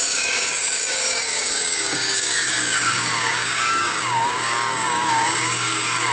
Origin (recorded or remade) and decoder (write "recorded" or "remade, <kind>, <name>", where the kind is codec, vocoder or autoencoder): remade, codec, DAC